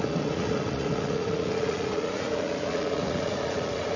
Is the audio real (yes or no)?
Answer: no